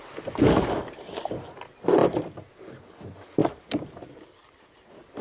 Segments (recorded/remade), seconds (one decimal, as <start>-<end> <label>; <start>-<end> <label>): 0.0-2.0 recorded; 2.0-3.0 remade; 3.0-3.4 recorded; 3.4-4.6 remade; 4.6-5.2 recorded